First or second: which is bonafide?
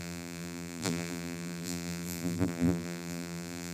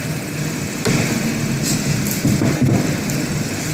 second